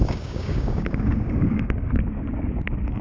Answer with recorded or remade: remade